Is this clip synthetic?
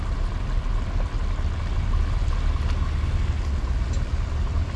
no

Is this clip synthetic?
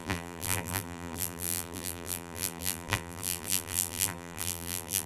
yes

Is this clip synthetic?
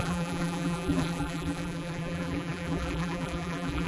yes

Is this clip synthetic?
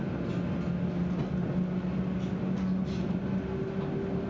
no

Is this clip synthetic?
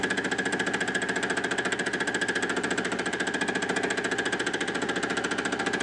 no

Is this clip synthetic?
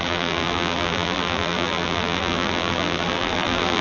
yes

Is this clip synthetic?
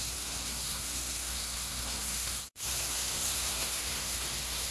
yes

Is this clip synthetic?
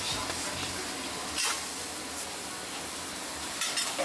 no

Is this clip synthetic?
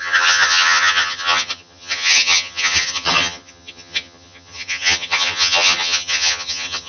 yes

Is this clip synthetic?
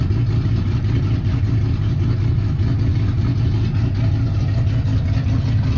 no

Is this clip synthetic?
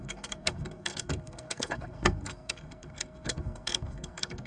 yes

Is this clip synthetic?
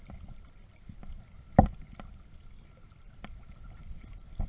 no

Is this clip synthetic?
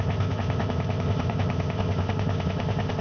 yes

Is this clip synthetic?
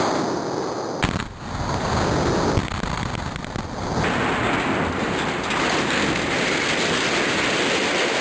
no